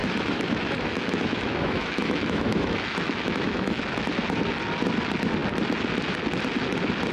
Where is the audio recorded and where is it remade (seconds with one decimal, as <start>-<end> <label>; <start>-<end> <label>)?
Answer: 0.0-3.8 remade; 3.8-7.1 recorded